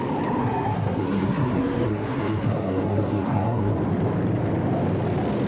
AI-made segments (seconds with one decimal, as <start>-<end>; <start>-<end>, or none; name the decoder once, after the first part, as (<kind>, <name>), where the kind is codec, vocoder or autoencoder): 0.4-3.7 (codec, SNAC)